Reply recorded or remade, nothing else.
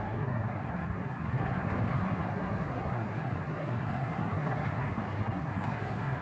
remade